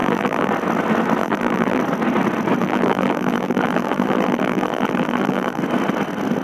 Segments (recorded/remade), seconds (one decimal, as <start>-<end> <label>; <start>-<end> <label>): 0.0-0.5 remade; 0.5-1.2 recorded; 1.2-1.8 remade; 1.8-2.6 recorded; 2.6-5.6 remade; 5.6-6.4 recorded